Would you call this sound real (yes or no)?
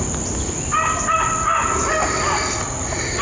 yes